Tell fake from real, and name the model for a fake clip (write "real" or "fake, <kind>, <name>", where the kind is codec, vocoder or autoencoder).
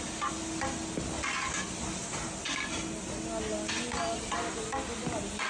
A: real